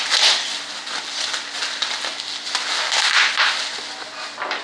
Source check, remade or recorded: recorded